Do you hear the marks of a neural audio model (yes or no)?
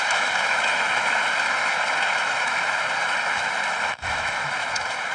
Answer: yes